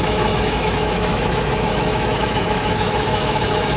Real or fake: fake